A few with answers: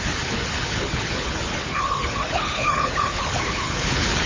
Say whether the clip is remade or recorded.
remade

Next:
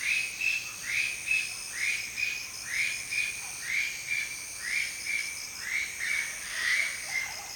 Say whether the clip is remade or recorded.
recorded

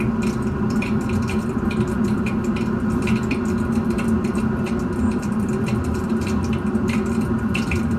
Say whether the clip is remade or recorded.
remade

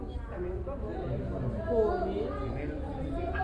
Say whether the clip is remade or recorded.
recorded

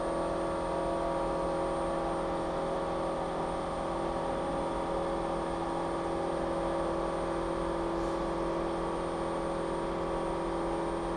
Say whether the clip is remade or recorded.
recorded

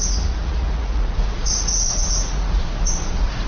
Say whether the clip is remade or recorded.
remade